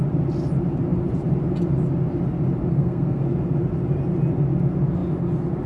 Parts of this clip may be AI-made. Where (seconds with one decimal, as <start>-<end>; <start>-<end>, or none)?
2.7-3.2